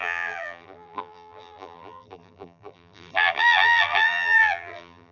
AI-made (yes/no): yes